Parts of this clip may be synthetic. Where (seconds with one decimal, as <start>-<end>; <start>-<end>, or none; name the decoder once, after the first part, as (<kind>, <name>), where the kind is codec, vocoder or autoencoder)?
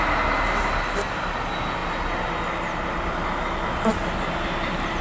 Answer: none